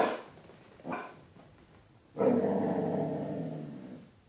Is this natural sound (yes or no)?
yes